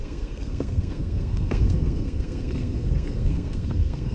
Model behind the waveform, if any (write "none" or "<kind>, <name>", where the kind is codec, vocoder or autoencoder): codec, SNAC